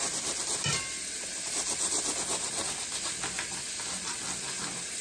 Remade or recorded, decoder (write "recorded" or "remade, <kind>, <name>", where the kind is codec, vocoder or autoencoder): recorded